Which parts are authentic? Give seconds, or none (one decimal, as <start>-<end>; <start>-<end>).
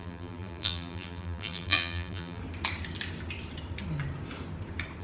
2.4-5.0